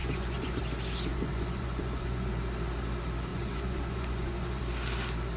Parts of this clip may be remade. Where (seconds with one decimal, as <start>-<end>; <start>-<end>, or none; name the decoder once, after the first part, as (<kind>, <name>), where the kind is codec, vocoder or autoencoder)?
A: 0.0-0.6 (vocoder, Vocos); 1.1-2.3; 3.3-4.6